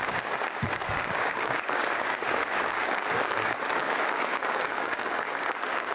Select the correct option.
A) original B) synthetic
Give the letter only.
B